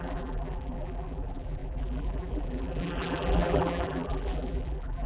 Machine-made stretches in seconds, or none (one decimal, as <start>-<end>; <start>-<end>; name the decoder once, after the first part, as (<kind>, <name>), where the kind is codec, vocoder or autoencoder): 0.0-5.1 (vocoder, BigVGAN v2)